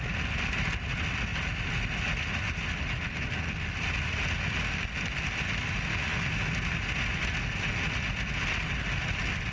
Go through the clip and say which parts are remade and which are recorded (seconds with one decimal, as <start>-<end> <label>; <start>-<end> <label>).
0.0-9.5 recorded